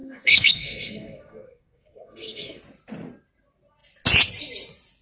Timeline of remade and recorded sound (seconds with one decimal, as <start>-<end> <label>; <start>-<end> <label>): 0.0-2.6 remade; 2.6-5.0 recorded